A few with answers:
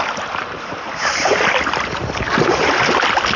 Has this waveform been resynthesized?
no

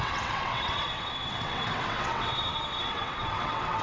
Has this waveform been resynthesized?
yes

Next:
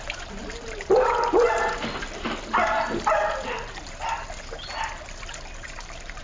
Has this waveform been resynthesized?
no